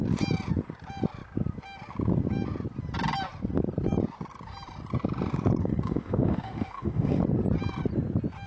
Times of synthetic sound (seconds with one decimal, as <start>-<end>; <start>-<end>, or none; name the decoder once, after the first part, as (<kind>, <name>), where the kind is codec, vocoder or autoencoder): 5.6-7.2 (autoencoder, DAC-VAE)